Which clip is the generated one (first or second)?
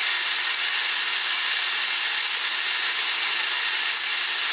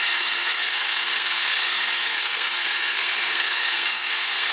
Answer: second